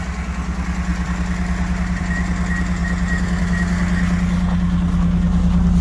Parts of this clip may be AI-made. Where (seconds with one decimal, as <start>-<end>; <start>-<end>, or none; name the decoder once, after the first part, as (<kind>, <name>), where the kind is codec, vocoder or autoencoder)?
0.9-2.0 (vocoder, BigVGAN v2); 2.8-3.4